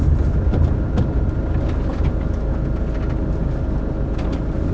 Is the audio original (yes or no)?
yes